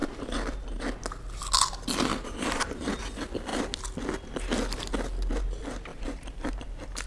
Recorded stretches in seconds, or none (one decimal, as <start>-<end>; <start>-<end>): 0.8-2.1; 2.9-5.9; 6.5-7.1